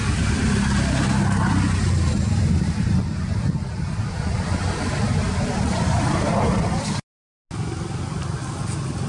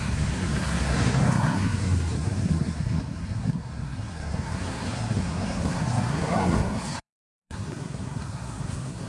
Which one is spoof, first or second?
second